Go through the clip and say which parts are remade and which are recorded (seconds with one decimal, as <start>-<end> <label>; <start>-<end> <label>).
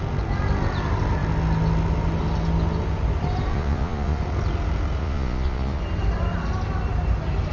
0.0-3.5 recorded; 3.5-4.2 remade; 4.2-5.0 recorded; 5.0-5.8 remade; 5.8-7.5 recorded